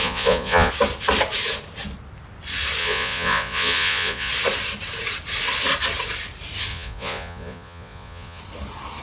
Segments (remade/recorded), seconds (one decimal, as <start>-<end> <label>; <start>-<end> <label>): 0.0-0.7 remade; 0.7-2.8 recorded; 2.8-4.3 remade; 4.3-6.7 recorded; 6.7-8.4 remade; 8.4-9.0 recorded